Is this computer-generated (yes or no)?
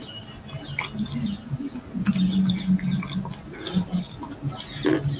no